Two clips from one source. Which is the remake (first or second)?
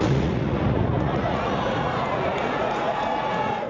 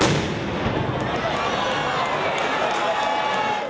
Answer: first